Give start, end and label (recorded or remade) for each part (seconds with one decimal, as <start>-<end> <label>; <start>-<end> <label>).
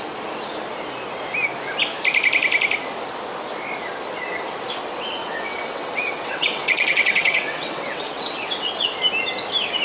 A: 0.0-5.2 recorded; 5.2-9.0 remade; 9.0-9.8 recorded